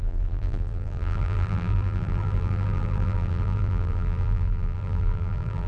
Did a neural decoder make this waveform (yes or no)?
yes